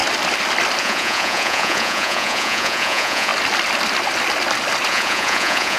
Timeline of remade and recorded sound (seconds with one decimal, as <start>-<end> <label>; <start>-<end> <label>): 0.0-0.8 recorded; 0.8-3.3 remade; 3.3-4.9 recorded; 4.9-5.8 remade